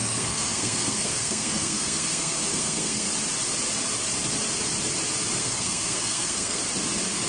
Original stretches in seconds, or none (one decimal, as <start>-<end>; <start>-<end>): 3.1-5.4; 6.6-7.3